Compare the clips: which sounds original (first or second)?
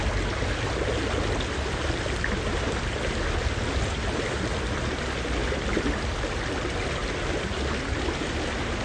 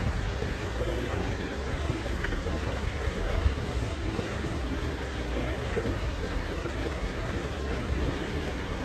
first